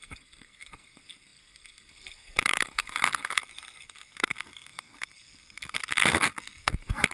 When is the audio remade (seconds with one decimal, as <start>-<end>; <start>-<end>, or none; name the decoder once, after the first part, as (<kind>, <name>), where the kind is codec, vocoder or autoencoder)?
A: 0.0-7.1 (codec, SNAC)